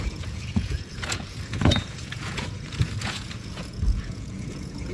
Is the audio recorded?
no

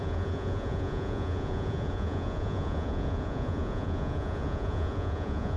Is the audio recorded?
no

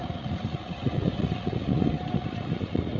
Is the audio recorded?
no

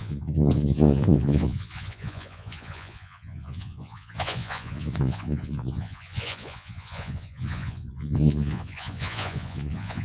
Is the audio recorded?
no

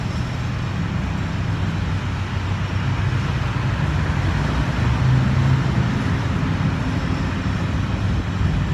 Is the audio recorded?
yes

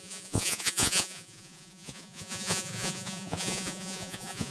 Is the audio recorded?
no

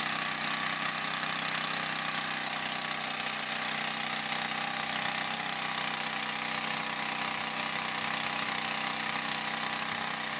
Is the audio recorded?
yes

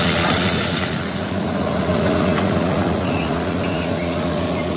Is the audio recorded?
no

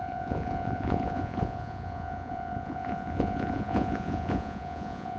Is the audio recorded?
no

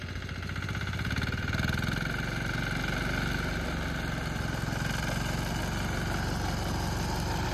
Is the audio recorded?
yes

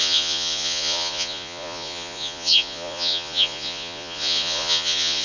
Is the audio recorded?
no